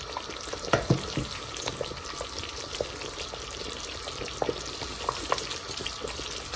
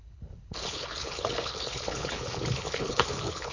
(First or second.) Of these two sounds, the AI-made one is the second